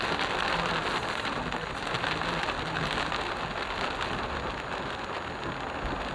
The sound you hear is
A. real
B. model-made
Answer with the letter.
A